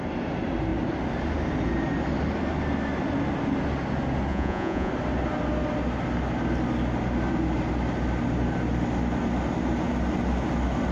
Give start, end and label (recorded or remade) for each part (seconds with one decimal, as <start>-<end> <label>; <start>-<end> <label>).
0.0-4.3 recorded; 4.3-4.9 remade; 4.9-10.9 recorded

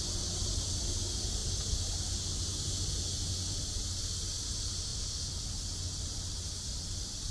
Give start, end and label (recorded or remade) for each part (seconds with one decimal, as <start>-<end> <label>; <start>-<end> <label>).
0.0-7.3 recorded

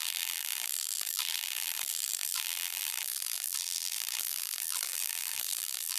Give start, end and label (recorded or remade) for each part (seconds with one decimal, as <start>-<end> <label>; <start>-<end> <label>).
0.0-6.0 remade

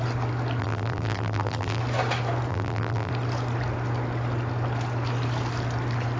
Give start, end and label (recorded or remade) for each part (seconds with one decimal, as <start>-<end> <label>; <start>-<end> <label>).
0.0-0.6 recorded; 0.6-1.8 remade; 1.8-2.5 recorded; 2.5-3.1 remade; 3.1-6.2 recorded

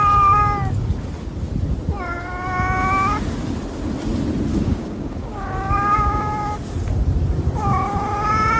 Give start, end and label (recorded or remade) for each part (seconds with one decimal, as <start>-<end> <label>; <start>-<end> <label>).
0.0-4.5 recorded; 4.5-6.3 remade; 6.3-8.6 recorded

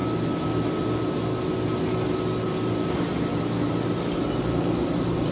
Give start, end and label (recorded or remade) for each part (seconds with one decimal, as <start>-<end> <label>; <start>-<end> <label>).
0.0-5.3 recorded

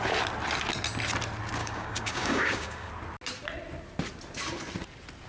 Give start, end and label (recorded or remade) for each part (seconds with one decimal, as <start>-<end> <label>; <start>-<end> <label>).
0.0-1.6 recorded; 1.6-2.9 remade; 2.9-5.3 recorded